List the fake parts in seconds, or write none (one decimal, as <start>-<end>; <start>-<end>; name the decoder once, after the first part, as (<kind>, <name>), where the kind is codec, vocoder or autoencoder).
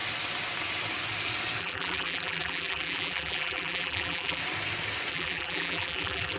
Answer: 1.6-4.4 (vocoder, BigVGAN v2); 5.1-6.4